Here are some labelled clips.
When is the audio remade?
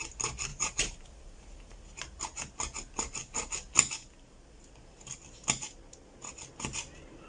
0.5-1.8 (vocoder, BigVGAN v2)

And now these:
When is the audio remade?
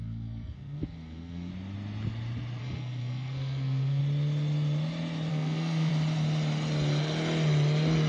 0.0-1.5 (codec, SNAC); 2.6-4.0; 5.3-5.9